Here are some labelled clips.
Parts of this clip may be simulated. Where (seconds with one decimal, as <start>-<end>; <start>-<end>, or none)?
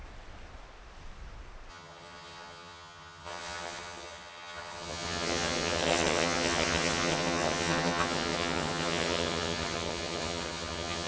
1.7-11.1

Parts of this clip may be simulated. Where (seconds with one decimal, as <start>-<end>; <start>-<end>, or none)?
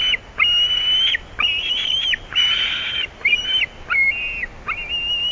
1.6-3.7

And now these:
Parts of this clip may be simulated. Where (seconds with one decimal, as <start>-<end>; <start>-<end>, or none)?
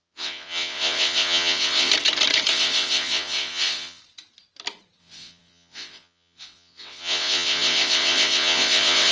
0.0-1.9; 2.5-4.0; 5.0-9.1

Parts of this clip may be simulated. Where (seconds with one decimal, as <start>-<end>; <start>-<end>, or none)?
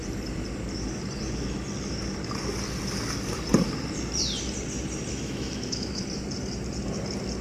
5.1-6.0